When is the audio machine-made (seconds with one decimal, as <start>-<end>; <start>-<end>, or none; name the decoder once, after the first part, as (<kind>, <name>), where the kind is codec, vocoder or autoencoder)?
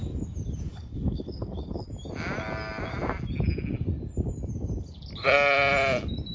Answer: 0.7-1.9 (codec, HILCodec)